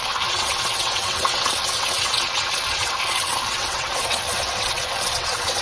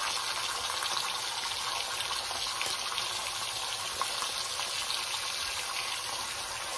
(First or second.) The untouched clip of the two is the second